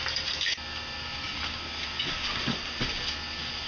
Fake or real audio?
real